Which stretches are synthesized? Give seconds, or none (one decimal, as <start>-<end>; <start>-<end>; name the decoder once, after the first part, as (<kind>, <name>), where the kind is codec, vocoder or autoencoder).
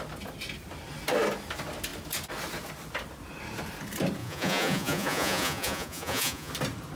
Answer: 4.2-6.5 (vocoder, Vocos)